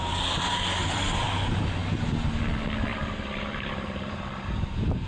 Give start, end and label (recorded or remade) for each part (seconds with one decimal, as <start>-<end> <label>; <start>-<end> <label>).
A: 0.0-2.9 recorded; 2.9-5.1 remade